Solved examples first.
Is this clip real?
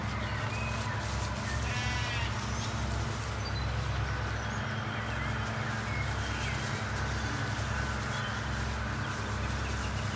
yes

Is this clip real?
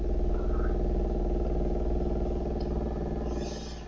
yes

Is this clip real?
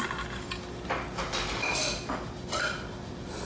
yes